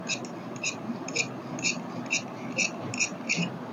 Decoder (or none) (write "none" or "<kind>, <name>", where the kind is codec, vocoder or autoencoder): none